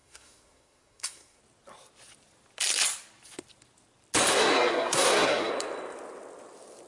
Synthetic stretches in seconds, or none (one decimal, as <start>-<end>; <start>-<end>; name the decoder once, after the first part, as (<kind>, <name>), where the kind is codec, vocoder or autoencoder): 0.0-1.4 (codec, SNAC); 4.3-5.5